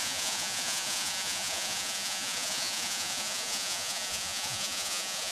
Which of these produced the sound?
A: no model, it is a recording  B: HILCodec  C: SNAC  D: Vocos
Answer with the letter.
D